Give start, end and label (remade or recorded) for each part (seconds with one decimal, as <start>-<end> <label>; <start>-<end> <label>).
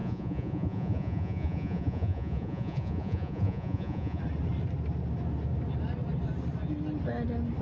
0.0-4.2 remade; 4.2-7.6 recorded